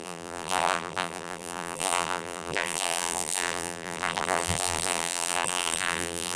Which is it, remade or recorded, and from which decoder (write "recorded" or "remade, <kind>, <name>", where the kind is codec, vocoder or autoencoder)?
remade, vocoder, BigVGAN v2